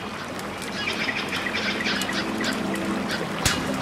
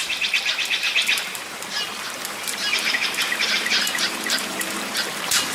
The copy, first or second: second